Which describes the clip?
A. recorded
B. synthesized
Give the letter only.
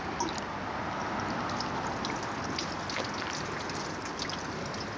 A